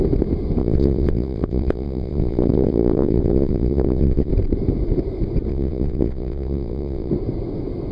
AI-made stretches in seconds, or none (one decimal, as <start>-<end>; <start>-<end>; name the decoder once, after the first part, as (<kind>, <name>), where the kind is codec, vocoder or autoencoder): 0.6-4.3 (vocoder, WaveNeXt); 5.5-7.1

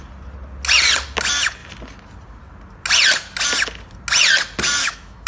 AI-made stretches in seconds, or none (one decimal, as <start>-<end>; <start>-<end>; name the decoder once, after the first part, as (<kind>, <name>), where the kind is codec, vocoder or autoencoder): 4.8-5.3 (autoencoder, DAC-VAE)

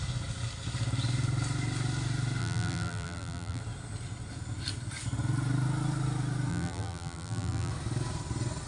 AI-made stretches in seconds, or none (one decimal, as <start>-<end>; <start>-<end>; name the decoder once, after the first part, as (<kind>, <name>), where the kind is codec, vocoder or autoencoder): 2.4-3.6 (vocoder, BigVGAN v2); 6.5-7.7

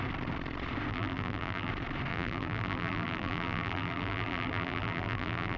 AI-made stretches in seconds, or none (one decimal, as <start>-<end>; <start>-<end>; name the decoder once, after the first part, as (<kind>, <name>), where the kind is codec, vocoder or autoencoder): 0.9-1.7 (vocoder, BigVGAN v2); 2.1-5.6

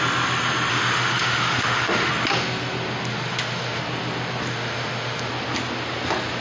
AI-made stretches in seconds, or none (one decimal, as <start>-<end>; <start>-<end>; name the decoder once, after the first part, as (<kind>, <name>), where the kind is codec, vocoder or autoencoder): 0.7-2.1 (autoencoder, DAC-VAE); 3.1-3.8; 4.5-5.3

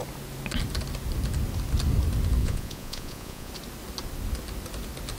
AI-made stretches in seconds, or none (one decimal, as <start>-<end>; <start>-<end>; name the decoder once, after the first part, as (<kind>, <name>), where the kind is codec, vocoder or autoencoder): 2.4-3.5 (vocoder, Vocos)

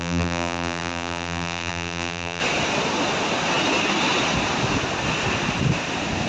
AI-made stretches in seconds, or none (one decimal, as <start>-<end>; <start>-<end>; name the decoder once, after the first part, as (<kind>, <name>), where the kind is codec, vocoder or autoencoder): 0.0-2.4 (vocoder, BigVGAN v2)